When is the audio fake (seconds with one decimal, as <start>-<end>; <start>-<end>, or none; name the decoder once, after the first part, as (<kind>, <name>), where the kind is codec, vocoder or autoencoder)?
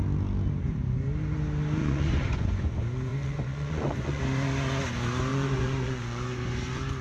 1.8-2.7 (vocoder, Vocos); 3.1-4.2; 5.3-6.4